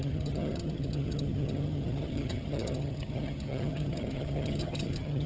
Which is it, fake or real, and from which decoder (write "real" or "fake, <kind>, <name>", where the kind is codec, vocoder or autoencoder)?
fake, vocoder, HiFi-GAN